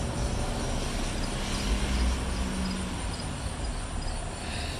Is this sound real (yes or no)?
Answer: yes